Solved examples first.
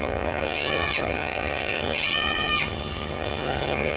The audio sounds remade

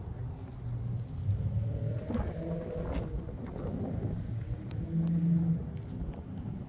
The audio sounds recorded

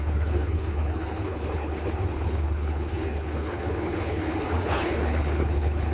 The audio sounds remade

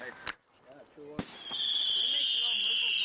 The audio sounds recorded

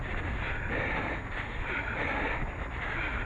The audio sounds recorded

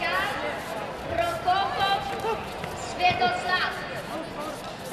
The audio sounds recorded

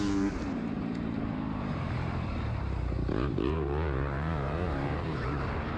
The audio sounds remade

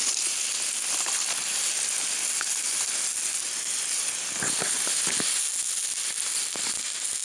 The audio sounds recorded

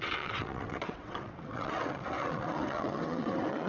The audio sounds remade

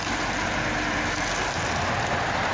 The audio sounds recorded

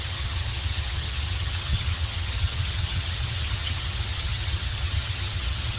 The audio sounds remade